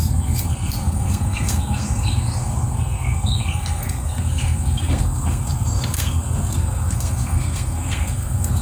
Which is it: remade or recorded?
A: remade